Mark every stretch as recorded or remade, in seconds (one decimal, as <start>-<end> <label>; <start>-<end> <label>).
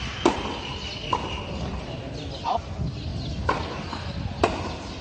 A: 0.0-5.0 recorded